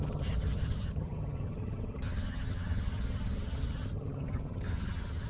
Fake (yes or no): yes